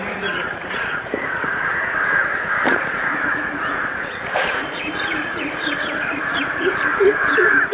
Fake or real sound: fake